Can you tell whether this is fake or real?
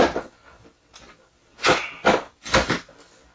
real